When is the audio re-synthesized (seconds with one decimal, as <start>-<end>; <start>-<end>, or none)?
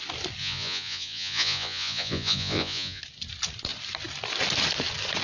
0.4-3.0